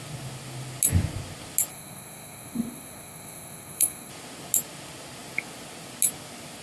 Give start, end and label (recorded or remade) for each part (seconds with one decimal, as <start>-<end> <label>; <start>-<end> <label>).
0.0-1.7 recorded; 1.7-4.1 remade; 4.1-6.6 recorded